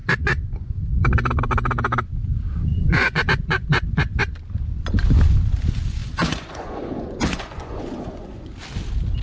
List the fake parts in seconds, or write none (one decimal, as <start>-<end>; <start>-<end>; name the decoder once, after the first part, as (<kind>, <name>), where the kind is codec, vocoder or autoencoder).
0.0-1.0 (vocoder, Vocos); 2.7-4.2; 6.0-8.5